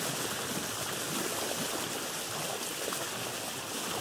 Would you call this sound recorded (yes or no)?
yes